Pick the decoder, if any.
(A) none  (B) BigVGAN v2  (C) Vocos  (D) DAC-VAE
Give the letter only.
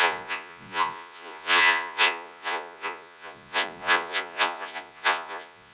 C